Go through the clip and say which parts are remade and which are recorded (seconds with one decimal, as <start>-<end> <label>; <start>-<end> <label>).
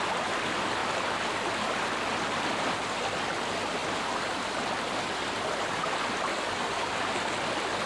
0.0-6.3 recorded; 6.3-6.9 remade; 6.9-7.9 recorded